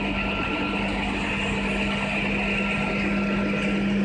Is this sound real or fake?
real